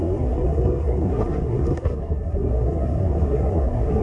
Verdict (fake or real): fake